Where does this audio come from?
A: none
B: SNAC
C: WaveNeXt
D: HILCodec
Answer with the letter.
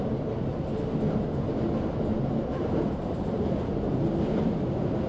A